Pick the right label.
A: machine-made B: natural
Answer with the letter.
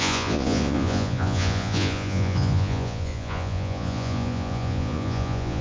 A